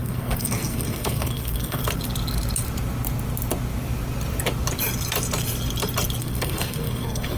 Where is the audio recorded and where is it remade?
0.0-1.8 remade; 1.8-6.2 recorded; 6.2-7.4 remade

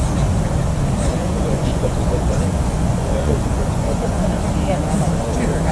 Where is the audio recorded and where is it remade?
0.0-1.1 recorded; 1.1-4.5 remade; 4.5-5.7 recorded

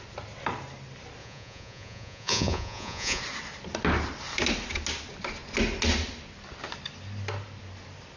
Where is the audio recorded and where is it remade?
0.0-1.2 recorded; 1.2-3.2 remade; 3.2-8.2 recorded

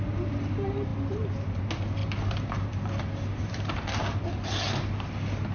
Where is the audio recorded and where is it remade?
0.0-2.0 recorded; 2.0-4.0 remade; 4.0-5.5 recorded

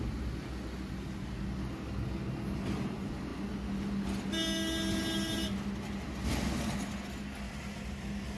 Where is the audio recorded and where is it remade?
0.0-8.4 recorded